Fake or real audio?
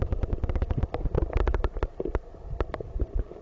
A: real